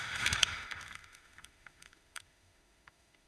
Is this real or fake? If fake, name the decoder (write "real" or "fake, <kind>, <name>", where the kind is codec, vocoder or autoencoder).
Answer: fake, autoencoder, DAC-VAE